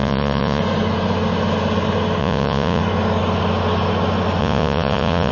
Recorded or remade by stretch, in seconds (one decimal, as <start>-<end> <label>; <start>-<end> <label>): 0.0-0.6 remade; 0.6-2.2 recorded; 2.2-2.8 remade; 2.8-4.4 recorded; 4.4-5.3 remade

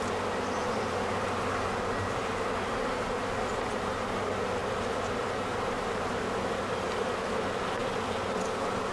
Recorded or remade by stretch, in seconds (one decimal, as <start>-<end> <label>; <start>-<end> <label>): 0.0-0.6 recorded; 0.6-1.3 remade; 1.3-4.6 recorded; 4.6-5.1 remade; 5.1-8.9 recorded

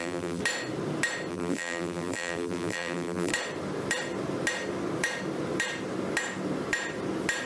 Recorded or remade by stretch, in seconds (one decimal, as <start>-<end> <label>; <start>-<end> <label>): 0.0-0.4 remade; 0.4-1.3 recorded; 1.3-3.3 remade; 3.3-7.5 recorded

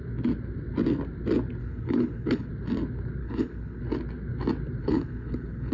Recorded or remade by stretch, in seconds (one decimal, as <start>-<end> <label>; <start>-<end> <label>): 0.0-1.6 recorded; 1.6-2.5 remade; 2.5-3.2 recorded; 3.2-3.8 remade; 3.8-4.8 recorded; 4.8-5.7 remade

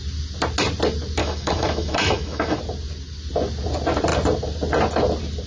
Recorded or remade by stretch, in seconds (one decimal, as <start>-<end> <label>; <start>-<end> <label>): 0.0-1.2 recorded; 1.2-2.6 remade; 2.6-5.5 recorded

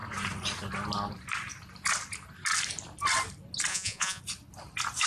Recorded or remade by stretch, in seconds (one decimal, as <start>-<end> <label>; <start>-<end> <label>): 0.0-3.7 recorded; 3.7-4.2 remade; 4.2-5.1 recorded

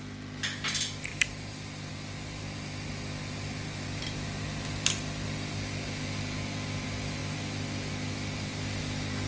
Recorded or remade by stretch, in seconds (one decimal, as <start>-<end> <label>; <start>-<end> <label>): 0.0-1.1 recorded; 1.1-1.9 remade; 1.9-9.3 recorded

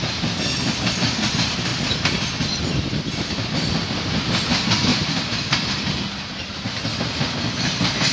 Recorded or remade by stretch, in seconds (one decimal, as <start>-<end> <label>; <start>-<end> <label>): 0.0-1.7 recorded; 1.7-4.1 remade; 4.1-4.9 recorded; 4.9-5.8 remade; 5.8-8.1 recorded